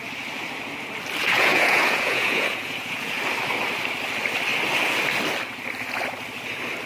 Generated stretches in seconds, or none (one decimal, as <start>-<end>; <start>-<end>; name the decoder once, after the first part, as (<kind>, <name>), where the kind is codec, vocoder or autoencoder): 1.2-3.2 (vocoder, Vocos)

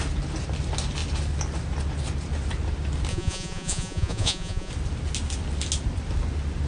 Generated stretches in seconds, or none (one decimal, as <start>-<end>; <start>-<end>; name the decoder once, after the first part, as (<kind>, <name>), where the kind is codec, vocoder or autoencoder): 3.1-4.7 (vocoder, Vocos)

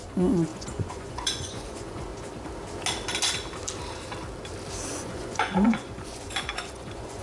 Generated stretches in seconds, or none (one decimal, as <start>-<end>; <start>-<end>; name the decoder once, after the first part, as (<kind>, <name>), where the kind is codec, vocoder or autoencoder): 0.0-2.1 (vocoder, Vocos); 4.9-7.2